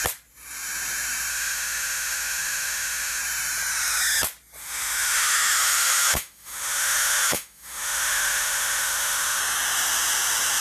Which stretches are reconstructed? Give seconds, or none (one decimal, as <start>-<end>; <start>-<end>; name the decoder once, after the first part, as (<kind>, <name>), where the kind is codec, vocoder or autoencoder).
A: 1.3-3.2 (autoencoder, DAC-VAE); 4.6-9.4

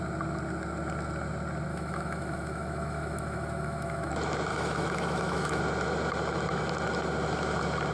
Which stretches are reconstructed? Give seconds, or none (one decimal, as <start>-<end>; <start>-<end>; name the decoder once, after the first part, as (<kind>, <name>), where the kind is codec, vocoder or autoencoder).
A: 1.7-4.1 (autoencoder, DAC-VAE); 4.5-5.6

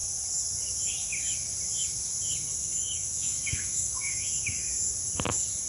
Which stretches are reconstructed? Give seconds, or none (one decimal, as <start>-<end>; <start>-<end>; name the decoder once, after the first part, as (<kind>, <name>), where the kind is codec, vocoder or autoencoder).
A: 2.6-4.7 (autoencoder, DAC-VAE)